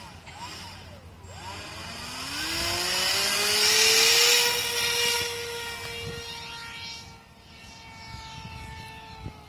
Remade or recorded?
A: recorded